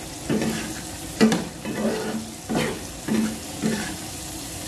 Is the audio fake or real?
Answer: real